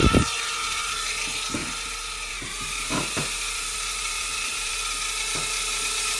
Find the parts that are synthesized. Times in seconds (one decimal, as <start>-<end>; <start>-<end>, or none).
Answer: 0.0-1.1; 1.6-4.7